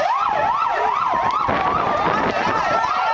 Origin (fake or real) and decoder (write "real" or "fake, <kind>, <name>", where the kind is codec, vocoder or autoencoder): real